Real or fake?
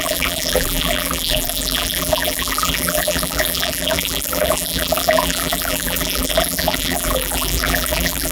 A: fake